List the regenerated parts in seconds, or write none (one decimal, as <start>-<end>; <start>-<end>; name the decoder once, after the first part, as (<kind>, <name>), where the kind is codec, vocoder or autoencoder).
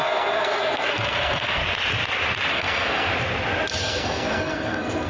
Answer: 0.0-1.6 (codec, SNAC); 2.5-3.1; 3.8-5.1